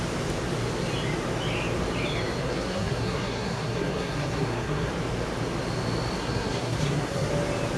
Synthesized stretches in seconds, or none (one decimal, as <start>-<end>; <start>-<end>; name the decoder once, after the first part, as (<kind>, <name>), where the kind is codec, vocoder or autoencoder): 2.4-4.9 (codec, SNAC); 6.2-7.3